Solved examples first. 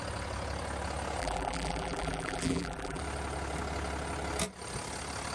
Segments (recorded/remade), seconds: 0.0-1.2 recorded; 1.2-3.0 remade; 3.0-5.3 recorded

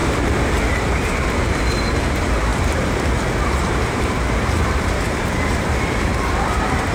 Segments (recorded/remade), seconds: 0.0-2.0 remade; 2.0-2.5 recorded; 2.5-6.9 remade

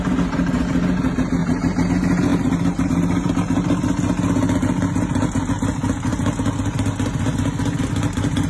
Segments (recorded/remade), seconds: 0.0-1.4 recorded; 1.4-1.9 remade; 1.9-2.3 recorded; 2.3-2.9 remade; 2.9-8.5 recorded